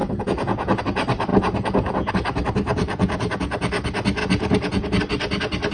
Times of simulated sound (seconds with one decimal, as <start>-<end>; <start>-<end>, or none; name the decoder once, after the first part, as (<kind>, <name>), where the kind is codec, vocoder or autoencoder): 0.0-0.8 (vocoder, Vocos); 1.3-2.1; 2.7-3.2; 4.2-5.0